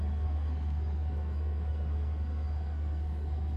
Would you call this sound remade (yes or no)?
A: yes